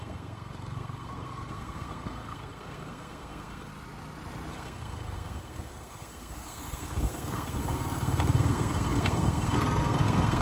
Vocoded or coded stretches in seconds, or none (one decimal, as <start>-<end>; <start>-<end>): 0.0-3.7; 4.5-10.4